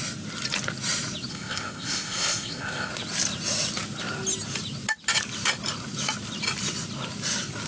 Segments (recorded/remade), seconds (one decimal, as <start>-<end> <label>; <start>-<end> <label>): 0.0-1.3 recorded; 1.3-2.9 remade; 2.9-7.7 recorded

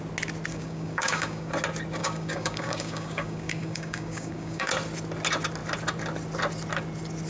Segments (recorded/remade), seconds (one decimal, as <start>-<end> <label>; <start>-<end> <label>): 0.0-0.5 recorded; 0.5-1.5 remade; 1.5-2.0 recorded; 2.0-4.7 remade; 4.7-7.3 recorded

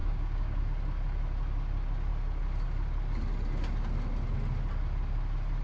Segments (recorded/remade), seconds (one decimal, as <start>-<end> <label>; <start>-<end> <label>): 0.0-0.6 remade; 0.6-5.6 recorded